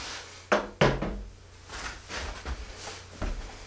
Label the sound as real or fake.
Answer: real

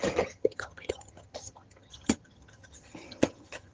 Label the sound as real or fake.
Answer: fake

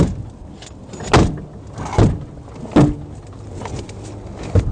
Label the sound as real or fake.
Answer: real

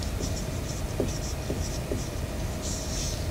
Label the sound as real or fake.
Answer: real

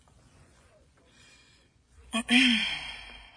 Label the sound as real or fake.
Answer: fake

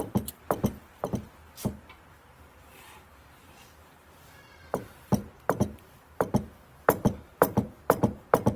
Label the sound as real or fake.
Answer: fake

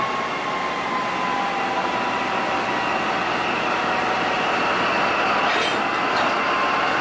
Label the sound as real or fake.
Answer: real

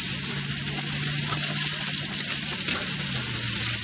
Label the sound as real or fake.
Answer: real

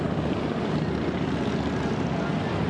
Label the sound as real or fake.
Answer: real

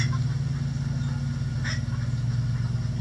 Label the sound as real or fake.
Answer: real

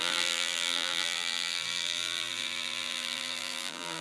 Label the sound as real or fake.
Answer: fake